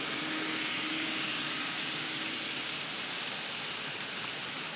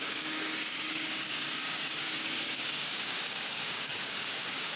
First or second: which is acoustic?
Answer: first